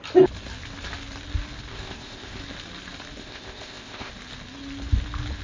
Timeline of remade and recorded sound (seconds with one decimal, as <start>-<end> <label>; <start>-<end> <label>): 0.0-1.7 recorded; 1.7-2.4 remade; 2.4-3.2 recorded; 3.2-4.1 remade; 4.1-5.4 recorded